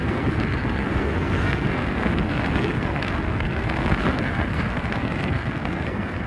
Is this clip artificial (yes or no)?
yes